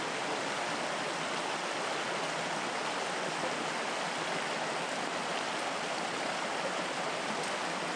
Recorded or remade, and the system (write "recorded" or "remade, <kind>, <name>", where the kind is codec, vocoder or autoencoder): recorded